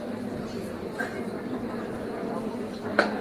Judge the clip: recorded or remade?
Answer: recorded